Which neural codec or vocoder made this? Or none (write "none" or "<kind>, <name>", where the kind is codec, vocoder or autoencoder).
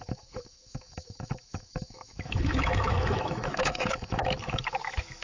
autoencoder, DAC-VAE